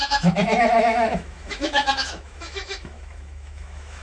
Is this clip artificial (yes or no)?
yes